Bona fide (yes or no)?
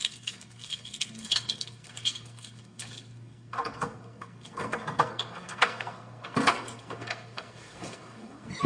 no